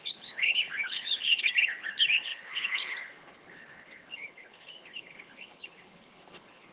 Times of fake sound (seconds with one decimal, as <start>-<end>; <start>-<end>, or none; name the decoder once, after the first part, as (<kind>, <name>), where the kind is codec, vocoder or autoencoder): 0.0-6.7 (codec, HILCodec)

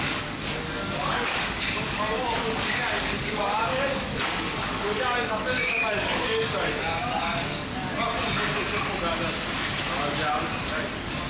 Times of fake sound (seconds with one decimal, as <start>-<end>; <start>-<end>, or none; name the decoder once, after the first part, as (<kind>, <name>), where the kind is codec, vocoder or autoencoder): 0.0-7.7 (codec, DAC)

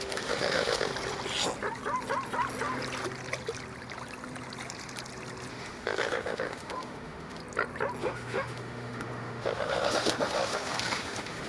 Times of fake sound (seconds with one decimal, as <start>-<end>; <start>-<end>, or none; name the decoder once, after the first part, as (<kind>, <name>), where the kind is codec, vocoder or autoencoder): 0.0-0.9 (autoencoder, DAC-VAE); 5.5-7.4; 8.0-11.5

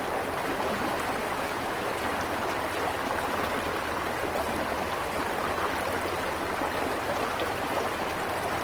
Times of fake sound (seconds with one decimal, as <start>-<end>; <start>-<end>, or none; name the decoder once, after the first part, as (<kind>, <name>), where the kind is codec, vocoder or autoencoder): 1.2-1.9 (autoencoder, DAC-VAE)

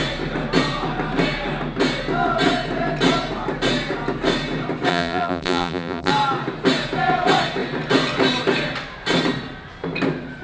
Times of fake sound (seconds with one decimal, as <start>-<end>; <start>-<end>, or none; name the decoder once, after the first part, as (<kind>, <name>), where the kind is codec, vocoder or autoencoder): 4.9-6.1 (vocoder, BigVGAN v2)

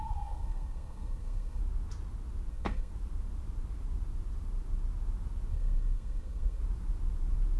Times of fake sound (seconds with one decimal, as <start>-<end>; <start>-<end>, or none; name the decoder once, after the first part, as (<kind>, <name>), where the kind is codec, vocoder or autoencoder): 0.0-1.6 (codec, SNAC); 2.5-2.9; 5.5-6.6

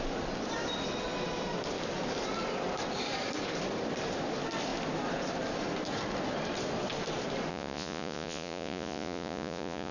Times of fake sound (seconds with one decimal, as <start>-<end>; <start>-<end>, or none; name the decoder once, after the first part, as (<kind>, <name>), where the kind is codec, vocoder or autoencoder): 7.5-9.9 (vocoder, Vocos)

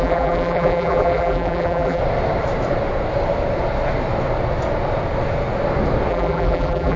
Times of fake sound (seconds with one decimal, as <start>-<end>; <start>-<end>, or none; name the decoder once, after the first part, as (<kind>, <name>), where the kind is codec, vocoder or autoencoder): 0.0-2.0 (vocoder, BigVGAN v2); 6.1-7.0